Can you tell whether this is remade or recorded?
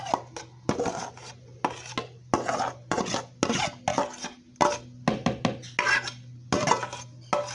recorded